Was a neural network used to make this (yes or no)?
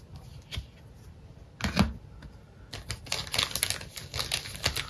no